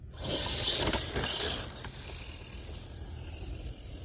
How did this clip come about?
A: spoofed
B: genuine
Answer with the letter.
B